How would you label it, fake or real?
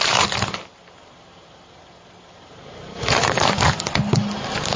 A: fake